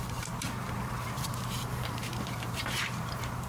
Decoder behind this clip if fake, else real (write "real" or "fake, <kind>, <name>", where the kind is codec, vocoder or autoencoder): fake, vocoder, BigVGAN v2